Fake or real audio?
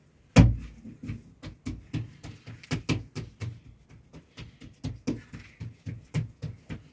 real